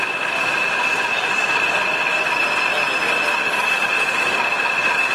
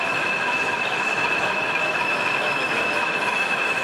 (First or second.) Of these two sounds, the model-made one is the second